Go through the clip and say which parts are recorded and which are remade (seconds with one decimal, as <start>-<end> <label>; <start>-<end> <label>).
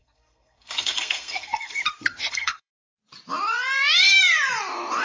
0.0-1.8 remade; 1.8-2.3 recorded; 2.3-2.7 remade; 2.7-5.0 recorded